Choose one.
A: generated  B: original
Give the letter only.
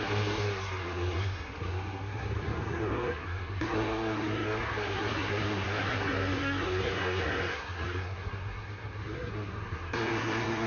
A